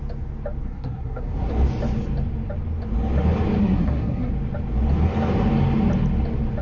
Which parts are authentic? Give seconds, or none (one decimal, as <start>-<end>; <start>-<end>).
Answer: 0.0-0.6; 1.5-3.6; 4.3-6.6